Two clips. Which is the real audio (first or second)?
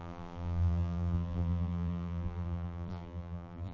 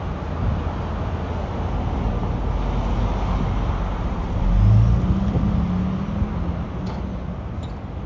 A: second